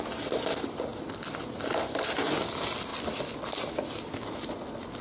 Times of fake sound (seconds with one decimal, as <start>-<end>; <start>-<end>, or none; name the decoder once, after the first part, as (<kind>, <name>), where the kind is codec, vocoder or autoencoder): 0.9-2.0 (vocoder, BigVGAN v2); 2.9-3.5